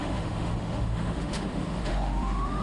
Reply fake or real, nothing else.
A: fake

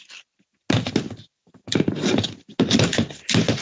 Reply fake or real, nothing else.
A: real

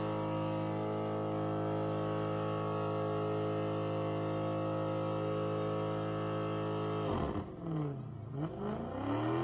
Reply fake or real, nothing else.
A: real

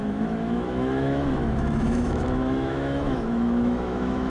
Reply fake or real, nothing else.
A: fake